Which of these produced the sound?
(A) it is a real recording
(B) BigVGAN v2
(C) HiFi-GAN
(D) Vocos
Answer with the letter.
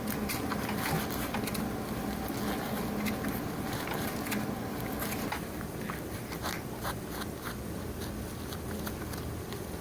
A